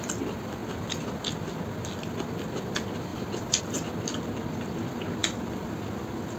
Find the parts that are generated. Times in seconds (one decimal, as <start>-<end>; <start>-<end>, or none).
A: 3.1-3.6; 5.2-6.4